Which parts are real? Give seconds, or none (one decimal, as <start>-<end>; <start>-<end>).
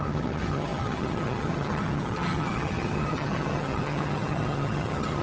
none